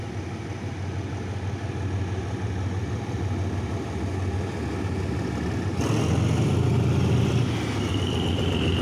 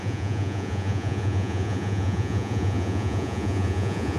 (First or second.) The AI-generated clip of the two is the second